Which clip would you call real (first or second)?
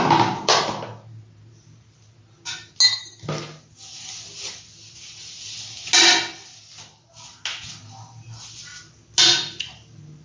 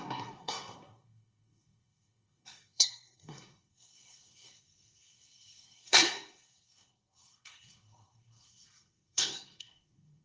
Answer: first